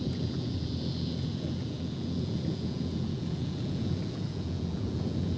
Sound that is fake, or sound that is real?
fake